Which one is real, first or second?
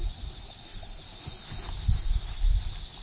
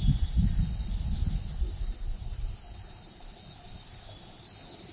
first